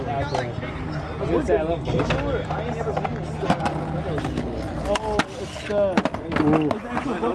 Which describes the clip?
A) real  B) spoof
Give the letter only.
A